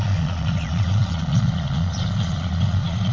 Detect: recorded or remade remade